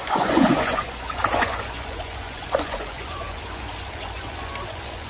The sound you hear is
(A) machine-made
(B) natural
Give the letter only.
A